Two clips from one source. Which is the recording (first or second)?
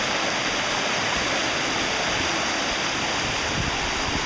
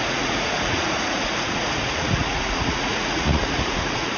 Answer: first